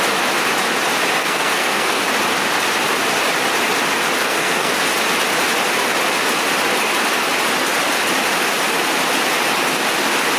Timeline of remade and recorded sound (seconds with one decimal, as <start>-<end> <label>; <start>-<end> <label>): 0.0-1.2 recorded; 1.2-2.0 remade; 2.0-4.2 recorded; 4.2-4.7 remade; 4.7-10.4 recorded

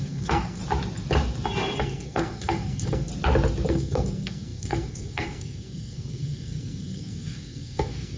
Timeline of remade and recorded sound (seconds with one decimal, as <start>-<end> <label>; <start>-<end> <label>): 0.0-0.6 remade; 0.6-1.8 recorded; 1.8-3.1 remade; 3.1-3.7 recorded; 3.7-8.2 remade

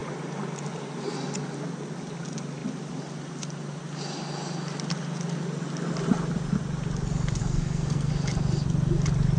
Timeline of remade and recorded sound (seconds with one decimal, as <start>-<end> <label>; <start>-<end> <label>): 0.0-7.4 recorded; 7.4-8.1 remade; 8.1-9.4 recorded

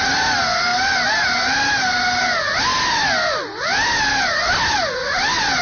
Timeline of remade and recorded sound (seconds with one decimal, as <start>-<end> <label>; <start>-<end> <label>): 0.0-5.6 recorded

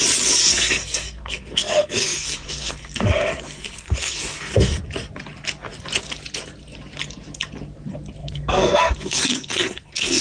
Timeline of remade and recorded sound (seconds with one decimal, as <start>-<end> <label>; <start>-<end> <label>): 0.0-0.5 recorded; 0.5-4.8 remade; 4.8-8.2 recorded; 8.2-10.2 remade